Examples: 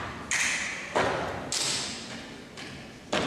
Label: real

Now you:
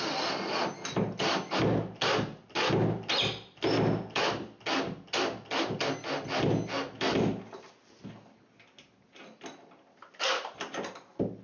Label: real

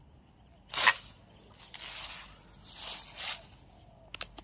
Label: real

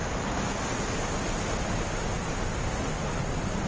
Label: real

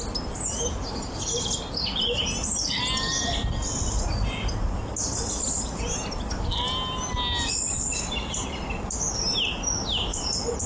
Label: real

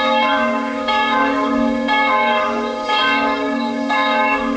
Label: fake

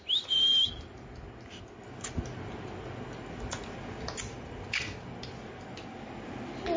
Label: real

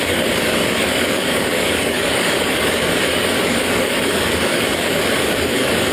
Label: fake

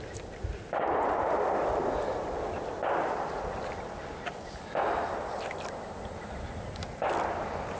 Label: real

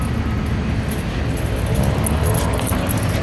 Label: real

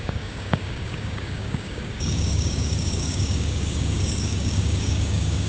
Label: fake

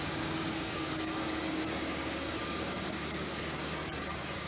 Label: fake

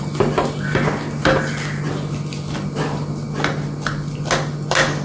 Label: real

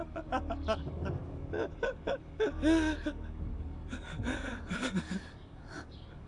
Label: fake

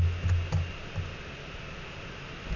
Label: real